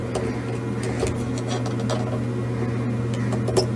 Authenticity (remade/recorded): recorded